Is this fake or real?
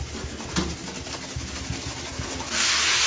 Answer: real